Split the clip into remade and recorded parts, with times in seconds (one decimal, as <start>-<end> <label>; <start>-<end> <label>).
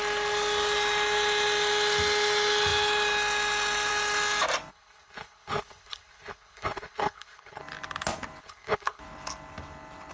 0.0-4.7 recorded; 4.7-7.6 remade; 7.6-8.4 recorded; 8.4-9.0 remade; 9.0-10.1 recorded